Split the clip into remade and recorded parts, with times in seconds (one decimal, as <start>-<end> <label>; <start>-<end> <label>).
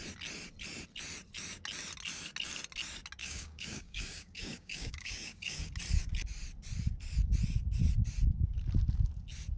0.0-3.2 recorded; 3.2-5.7 remade; 5.7-9.6 recorded